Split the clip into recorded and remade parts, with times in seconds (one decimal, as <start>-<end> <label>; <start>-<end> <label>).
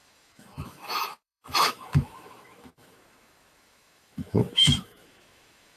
0.0-5.8 remade